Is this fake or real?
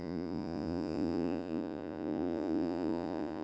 fake